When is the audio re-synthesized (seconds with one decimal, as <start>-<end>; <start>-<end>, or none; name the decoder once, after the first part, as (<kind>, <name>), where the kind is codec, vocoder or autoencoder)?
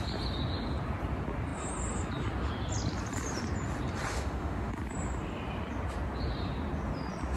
4.1-4.7 (autoencoder, DAC-VAE)